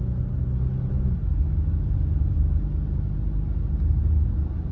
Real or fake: real